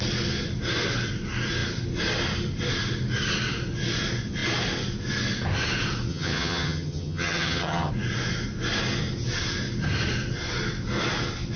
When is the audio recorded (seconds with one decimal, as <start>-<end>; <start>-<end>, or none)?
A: 0.0-6.1; 7.9-11.6